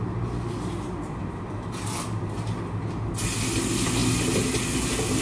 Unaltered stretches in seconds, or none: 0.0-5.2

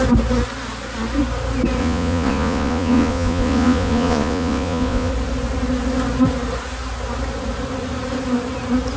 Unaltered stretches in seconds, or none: 0.0-1.8; 5.1-9.0

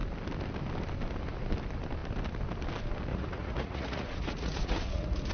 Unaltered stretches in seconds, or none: 0.0-3.1

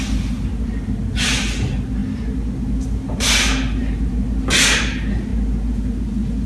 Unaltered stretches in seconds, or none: 0.0-6.5

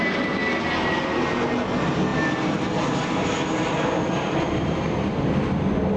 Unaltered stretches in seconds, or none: 0.0-2.1; 5.3-6.0

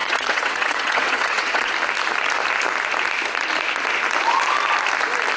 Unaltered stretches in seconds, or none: 1.7-5.4